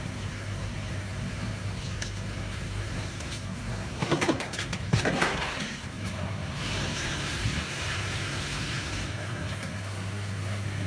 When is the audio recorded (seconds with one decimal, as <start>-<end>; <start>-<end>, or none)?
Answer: none